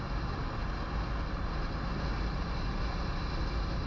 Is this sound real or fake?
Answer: real